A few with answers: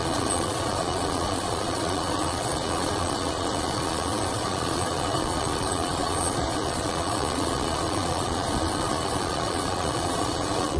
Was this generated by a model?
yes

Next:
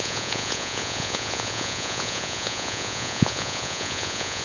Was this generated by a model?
yes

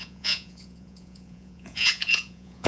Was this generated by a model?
yes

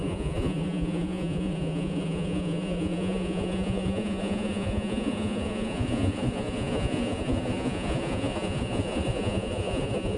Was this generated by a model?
yes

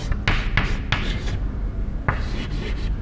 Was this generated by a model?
no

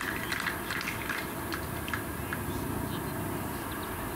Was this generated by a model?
no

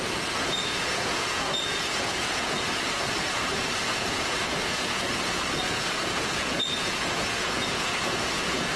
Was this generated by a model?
yes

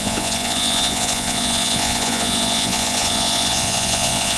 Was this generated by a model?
yes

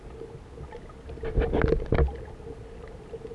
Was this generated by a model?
no